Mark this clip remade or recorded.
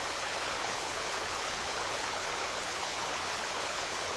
remade